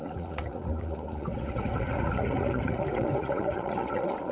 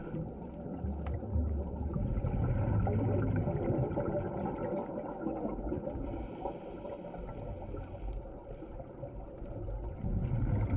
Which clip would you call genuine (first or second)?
second